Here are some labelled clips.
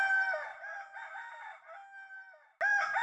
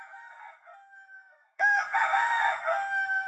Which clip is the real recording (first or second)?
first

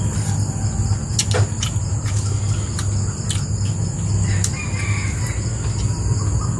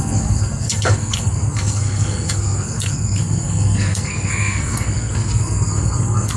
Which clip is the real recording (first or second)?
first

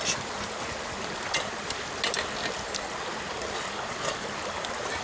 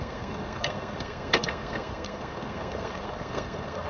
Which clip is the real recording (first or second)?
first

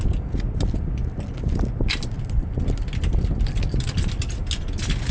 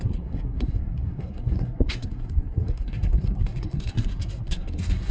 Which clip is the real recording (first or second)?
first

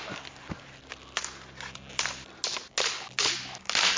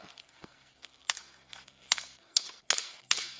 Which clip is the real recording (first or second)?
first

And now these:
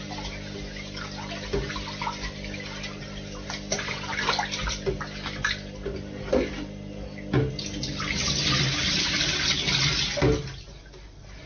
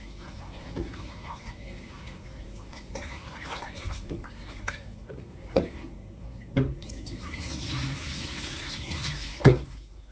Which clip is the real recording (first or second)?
first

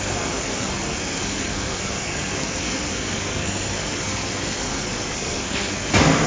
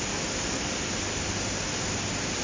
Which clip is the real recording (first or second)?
second